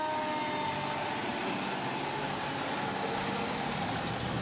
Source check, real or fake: real